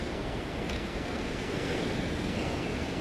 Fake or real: fake